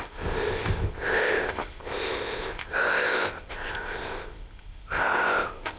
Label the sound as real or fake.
fake